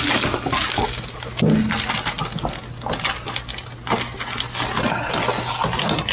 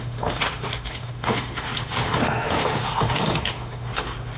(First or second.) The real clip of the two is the first